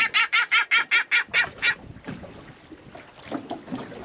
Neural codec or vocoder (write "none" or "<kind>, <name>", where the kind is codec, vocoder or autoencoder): none